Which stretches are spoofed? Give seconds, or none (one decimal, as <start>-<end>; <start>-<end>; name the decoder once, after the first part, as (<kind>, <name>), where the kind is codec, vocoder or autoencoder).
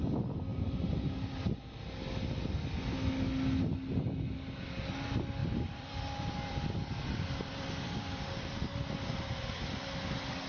0.5-1.6 (vocoder, BigVGAN v2); 5.4-10.5